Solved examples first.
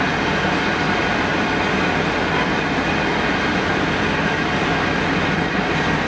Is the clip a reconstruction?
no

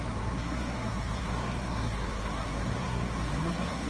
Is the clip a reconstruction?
yes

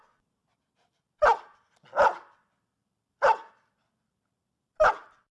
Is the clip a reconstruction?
no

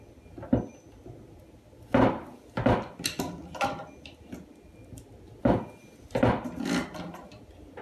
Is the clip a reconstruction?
no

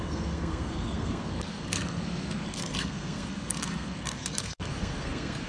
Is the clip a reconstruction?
yes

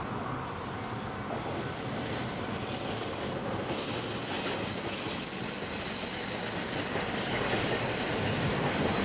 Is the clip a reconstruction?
no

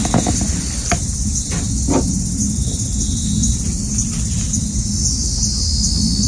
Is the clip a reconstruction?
no